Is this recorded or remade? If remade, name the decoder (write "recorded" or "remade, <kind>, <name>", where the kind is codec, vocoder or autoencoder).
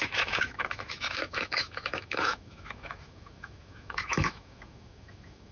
remade, autoencoder, DAC-VAE